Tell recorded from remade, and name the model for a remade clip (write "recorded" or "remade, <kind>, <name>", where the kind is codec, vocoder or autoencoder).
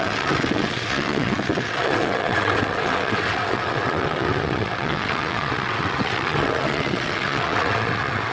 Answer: remade, vocoder, WaveNeXt